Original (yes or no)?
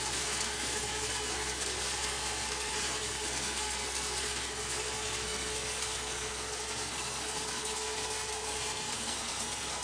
no